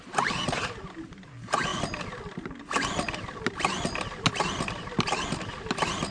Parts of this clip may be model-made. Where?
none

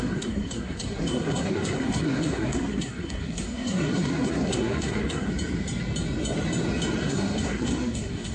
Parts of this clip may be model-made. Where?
0.0-5.3 (codec, SNAC); 7.0-8.3

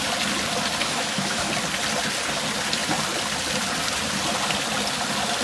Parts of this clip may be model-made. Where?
0.8-1.5 (autoencoder, DAC-VAE)

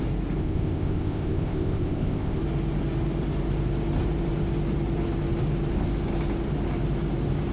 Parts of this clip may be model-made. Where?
0.4-2.4 (codec, ZipCodec)

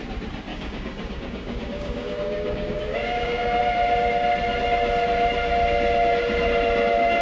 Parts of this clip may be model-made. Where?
0.5-3.6 (codec, DAC)

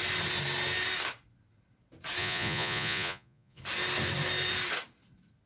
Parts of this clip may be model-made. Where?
2.2-3.6 (vocoder, Vocos)

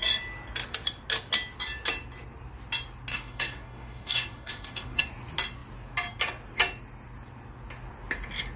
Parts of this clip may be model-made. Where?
3.1-5.0 (codec, DAC)